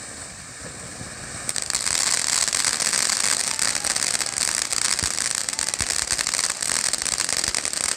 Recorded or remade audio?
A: recorded